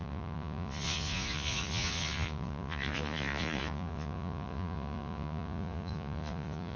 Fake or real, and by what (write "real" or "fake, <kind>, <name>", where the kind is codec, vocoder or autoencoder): fake, vocoder, Vocos